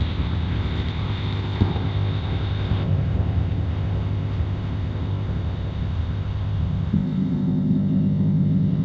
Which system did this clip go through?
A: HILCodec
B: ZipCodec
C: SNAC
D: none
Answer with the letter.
B